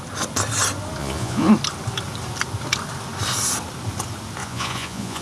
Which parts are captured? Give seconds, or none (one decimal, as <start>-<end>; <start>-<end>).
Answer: 0.0-1.0; 1.5-4.4